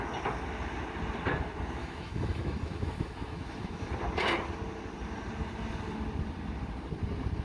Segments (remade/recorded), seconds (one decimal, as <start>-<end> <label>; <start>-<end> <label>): 0.0-1.8 recorded; 1.8-3.9 remade; 3.9-7.4 recorded